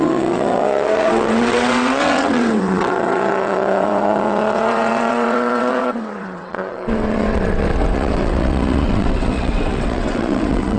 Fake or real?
fake